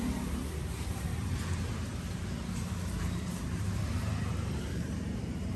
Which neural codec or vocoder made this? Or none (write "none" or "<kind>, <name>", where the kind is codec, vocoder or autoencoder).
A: vocoder, BigVGAN v2